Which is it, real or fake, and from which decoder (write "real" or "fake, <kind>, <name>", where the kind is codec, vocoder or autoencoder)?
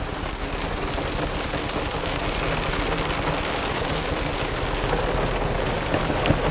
real